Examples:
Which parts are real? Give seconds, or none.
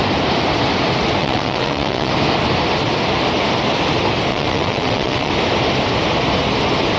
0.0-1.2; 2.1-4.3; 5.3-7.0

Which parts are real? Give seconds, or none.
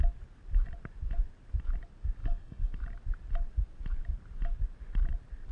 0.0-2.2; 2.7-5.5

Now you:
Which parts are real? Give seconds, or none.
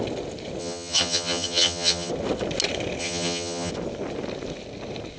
0.0-0.6; 2.1-3.0; 3.7-5.2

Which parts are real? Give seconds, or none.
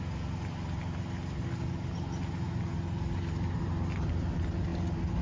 0.0-5.2